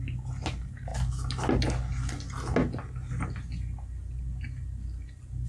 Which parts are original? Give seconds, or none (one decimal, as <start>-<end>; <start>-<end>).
0.0-5.5